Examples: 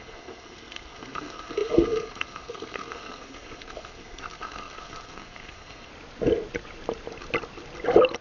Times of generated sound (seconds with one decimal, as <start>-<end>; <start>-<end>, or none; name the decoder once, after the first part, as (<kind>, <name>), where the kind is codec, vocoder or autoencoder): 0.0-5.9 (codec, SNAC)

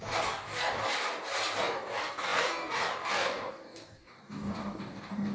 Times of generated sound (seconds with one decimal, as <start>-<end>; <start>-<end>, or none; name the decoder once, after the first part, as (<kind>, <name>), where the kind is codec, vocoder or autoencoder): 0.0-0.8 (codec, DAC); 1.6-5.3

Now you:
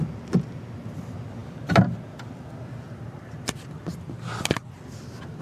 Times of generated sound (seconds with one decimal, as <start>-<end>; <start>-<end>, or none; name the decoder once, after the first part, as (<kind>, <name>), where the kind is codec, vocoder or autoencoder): none